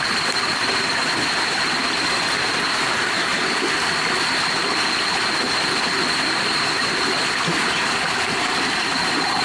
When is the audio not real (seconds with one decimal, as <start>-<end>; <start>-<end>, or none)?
0.0-0.6; 2.5-3.3; 7.8-9.4